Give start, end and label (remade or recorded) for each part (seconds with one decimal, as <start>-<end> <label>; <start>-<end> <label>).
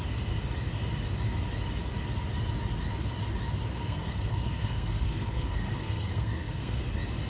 0.0-3.7 recorded; 3.7-6.8 remade; 6.8-7.3 recorded